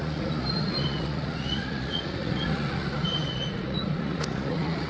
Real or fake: fake